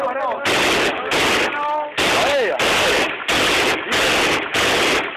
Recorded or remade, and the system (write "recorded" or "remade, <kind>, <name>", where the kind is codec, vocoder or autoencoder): recorded